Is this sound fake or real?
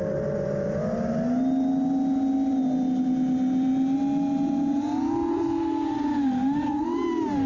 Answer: real